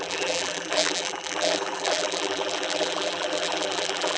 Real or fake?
fake